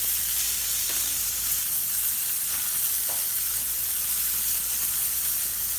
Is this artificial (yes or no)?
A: no